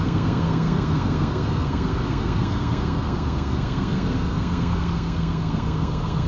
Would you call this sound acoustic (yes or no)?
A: no